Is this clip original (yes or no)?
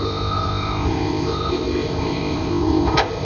no